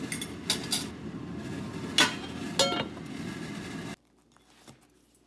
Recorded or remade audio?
recorded